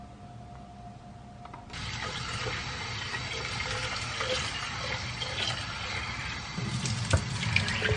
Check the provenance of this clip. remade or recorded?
recorded